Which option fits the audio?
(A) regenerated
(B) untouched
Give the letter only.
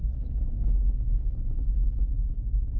B